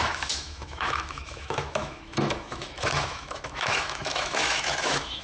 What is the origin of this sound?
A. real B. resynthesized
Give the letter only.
B